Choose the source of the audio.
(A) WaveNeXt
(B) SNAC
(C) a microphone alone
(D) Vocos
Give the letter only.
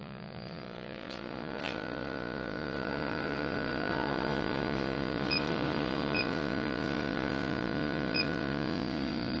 D